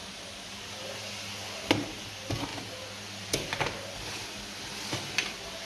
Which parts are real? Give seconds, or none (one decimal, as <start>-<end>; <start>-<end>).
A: 0.0-5.7